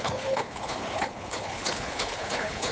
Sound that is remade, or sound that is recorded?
remade